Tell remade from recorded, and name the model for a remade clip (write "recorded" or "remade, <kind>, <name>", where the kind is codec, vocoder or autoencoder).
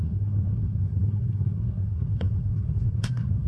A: remade, codec, SNAC